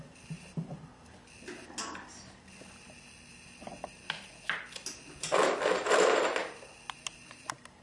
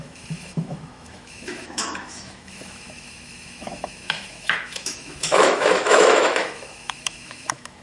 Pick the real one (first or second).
first